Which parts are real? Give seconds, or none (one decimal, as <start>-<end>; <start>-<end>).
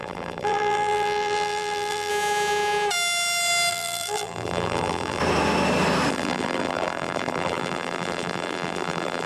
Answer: 2.1-3.7; 5.2-6.1